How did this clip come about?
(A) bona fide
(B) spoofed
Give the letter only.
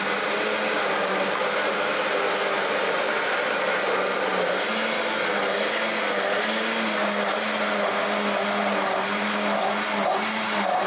A